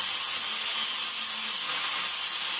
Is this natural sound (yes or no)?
yes